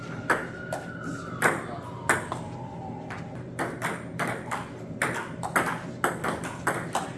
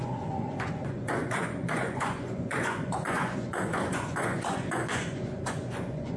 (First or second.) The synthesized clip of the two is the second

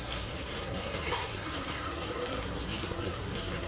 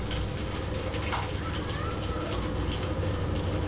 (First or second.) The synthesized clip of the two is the first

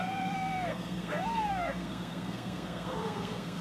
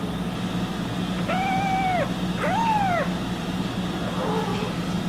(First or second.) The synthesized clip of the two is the first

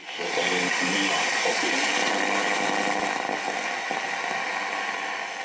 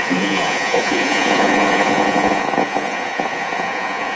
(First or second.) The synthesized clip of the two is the second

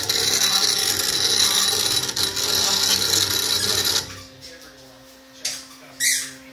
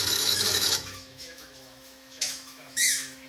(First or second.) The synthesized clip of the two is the second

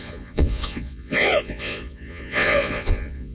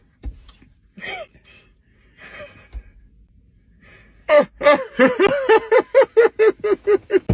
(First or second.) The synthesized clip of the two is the first